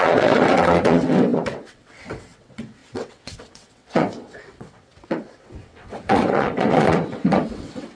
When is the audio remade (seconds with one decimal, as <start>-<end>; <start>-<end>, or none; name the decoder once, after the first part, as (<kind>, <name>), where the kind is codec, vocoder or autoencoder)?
0.0-8.0 (vocoder, WaveNeXt)

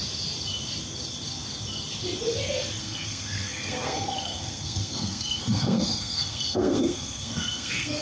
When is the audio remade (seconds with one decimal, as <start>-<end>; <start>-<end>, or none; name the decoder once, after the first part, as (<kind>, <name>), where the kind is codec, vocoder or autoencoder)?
2.8-8.0 (codec, SNAC)

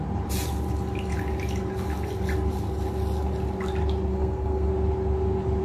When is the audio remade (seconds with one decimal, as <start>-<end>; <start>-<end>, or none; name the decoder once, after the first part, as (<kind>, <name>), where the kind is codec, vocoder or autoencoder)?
4.1-4.7 (codec, SNAC)

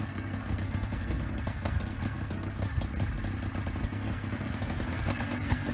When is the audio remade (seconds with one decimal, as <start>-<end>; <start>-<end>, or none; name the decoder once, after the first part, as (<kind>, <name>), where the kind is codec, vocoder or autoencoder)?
0.0-2.7 (codec, SNAC); 3.8-5.7

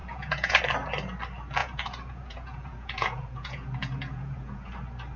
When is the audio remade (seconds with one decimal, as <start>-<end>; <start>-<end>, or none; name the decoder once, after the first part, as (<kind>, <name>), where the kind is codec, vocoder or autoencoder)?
0.0-0.6 (vocoder, Vocos); 1.6-4.7

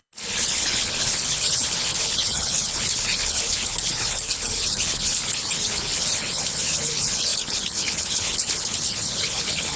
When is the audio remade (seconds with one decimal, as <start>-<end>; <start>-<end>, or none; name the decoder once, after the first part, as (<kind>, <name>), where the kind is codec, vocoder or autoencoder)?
0.0-9.8 (codec, HILCodec)